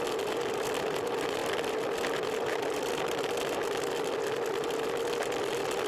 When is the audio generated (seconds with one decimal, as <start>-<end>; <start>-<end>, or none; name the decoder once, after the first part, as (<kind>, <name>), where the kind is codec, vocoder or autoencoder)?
none